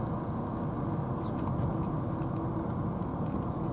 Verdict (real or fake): real